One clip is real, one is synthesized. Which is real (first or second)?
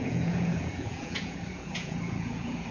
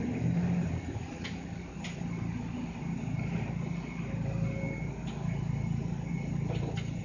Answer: second